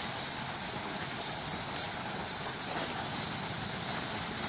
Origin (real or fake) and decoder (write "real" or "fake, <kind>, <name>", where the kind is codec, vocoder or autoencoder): real